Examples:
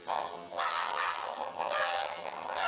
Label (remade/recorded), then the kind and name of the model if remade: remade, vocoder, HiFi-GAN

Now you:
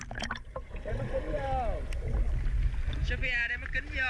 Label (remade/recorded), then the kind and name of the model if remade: recorded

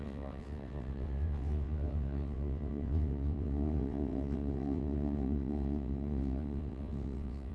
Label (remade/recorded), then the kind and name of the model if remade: remade, vocoder, WaveNeXt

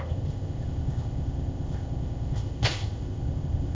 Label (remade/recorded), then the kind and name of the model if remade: remade, codec, ZipCodec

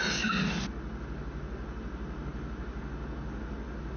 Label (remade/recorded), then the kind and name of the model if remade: recorded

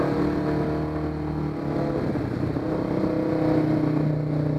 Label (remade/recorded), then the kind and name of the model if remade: recorded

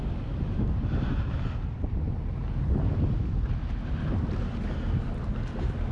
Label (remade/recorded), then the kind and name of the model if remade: recorded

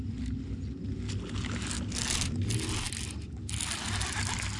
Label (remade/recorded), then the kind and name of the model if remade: recorded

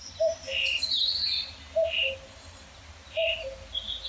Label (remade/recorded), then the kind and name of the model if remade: recorded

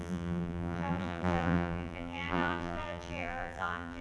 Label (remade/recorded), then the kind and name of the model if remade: remade, vocoder, BigVGAN v2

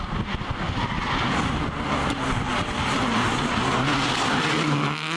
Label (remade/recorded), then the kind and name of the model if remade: recorded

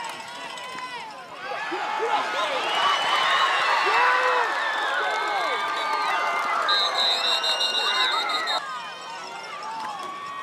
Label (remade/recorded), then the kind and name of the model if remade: recorded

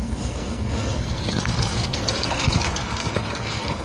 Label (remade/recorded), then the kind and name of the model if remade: remade, codec, SNAC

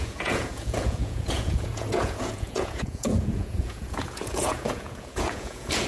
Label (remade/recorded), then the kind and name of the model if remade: remade, vocoder, Vocos